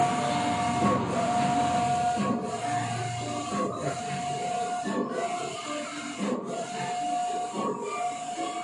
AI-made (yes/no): no